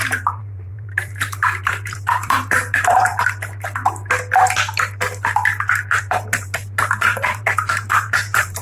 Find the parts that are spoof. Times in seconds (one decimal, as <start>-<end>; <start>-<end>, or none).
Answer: 0.0-3.1; 6.0-8.6